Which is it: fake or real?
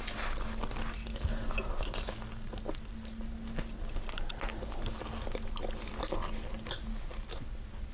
real